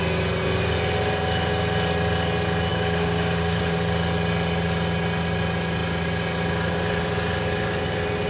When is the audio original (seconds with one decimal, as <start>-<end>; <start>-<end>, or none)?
0.0-2.7; 3.6-8.3